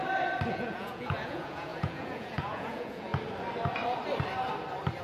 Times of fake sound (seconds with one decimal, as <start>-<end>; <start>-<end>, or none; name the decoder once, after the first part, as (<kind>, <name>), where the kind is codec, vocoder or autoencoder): 0.5-3.1 (vocoder, Vocos)